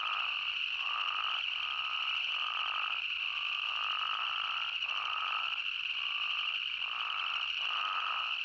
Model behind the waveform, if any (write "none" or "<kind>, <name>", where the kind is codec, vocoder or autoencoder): none